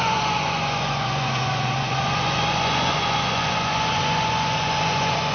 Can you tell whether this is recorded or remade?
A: remade